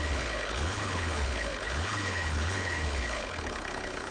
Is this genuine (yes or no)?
no